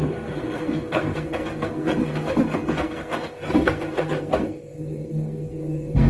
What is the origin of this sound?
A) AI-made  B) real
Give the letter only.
A